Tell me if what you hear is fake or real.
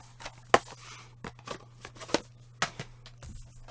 real